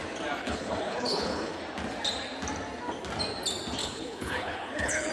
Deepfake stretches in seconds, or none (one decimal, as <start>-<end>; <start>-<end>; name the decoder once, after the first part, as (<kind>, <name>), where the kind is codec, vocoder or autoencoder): 0.4-1.6 (codec, HILCodec); 3.8-5.1